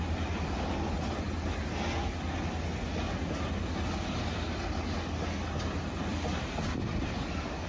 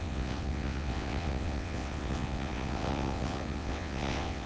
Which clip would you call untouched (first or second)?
first